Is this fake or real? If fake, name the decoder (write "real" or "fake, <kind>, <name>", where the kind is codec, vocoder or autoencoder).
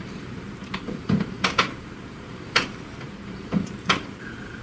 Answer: fake, vocoder, BigVGAN v2